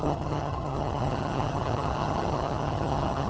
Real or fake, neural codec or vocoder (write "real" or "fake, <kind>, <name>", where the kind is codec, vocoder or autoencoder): fake, vocoder, HiFi-GAN